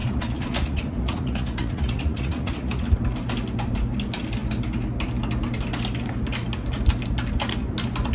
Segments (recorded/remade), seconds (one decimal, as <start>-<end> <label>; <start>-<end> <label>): 0.0-2.9 remade; 2.9-8.1 recorded